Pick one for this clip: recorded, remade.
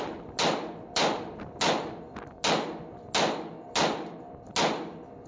recorded